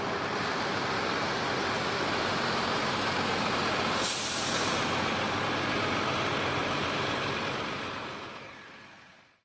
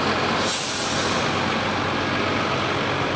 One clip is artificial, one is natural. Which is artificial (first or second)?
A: first